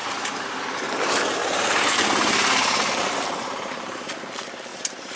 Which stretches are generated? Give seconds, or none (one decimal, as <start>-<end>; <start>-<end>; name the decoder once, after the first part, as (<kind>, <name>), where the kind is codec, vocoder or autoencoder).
0.0-0.8 (vocoder, BigVGAN v2); 1.4-4.1; 4.7-5.2